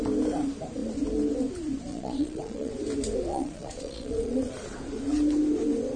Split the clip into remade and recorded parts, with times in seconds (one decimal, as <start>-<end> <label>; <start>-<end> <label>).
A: 0.0-1.9 recorded; 1.9-2.7 remade; 2.7-3.3 recorded; 3.3-4.5 remade; 4.5-6.0 recorded